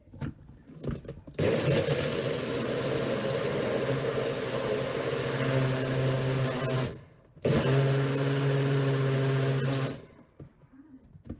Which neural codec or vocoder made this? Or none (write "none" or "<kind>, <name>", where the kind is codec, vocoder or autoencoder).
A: none